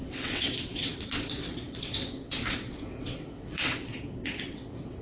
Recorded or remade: remade